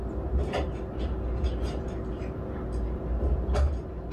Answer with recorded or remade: recorded